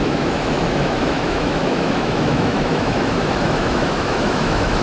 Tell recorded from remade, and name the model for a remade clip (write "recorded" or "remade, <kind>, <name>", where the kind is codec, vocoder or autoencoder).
remade, autoencoder, DAC-VAE